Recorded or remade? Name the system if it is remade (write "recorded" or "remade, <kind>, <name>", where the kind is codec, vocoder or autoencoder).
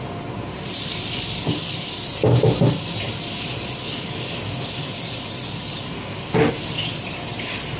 recorded